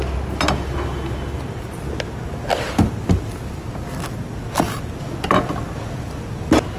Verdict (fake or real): real